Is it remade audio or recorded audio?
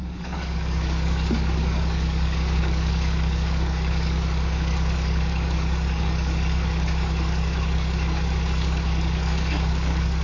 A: remade